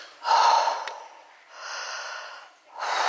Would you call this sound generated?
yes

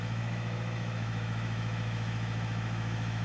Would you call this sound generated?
yes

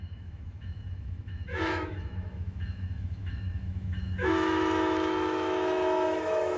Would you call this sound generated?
yes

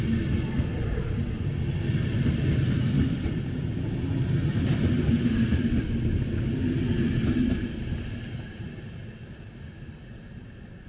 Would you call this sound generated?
no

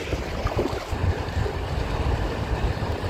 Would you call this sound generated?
yes